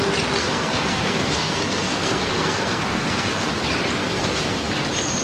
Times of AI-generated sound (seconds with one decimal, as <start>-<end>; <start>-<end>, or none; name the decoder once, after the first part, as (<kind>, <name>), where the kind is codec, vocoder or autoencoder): 0.4-3.5 (codec, SNAC); 4.0-4.7

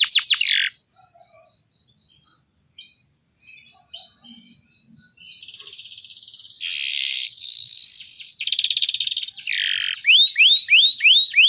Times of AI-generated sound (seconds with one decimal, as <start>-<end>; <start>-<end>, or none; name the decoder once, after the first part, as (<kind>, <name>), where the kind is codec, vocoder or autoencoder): 6.9-7.8 (codec, DAC)

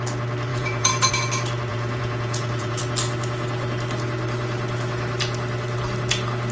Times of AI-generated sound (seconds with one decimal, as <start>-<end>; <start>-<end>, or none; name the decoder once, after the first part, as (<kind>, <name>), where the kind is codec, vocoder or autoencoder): 0.5-1.1 (vocoder, Vocos); 1.7-2.8

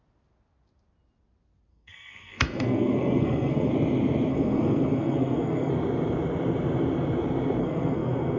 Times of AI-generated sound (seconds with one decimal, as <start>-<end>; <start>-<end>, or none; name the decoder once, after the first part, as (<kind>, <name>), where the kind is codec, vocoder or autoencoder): 1.7-3.7 (codec, SNAC); 4.3-5.7; 7.6-8.4

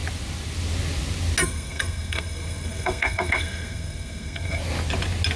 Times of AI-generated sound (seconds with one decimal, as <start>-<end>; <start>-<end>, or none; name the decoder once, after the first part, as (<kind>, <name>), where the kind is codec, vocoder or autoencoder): 1.4-4.6 (codec, SNAC)

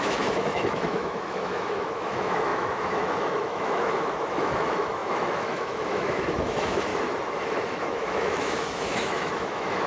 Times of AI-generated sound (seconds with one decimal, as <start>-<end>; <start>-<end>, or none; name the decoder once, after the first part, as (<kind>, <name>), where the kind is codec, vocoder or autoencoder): 0.0-6.9 (autoencoder, DAC-VAE); 7.5-9.9

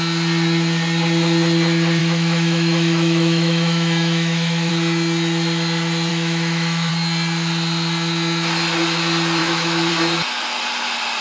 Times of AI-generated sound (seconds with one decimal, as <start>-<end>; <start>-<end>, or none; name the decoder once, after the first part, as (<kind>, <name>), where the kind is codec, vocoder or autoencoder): 2.0-4.7 (autoencoder, DAC-VAE); 6.1-6.9; 9.4-9.9